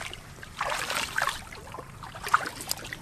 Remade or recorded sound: remade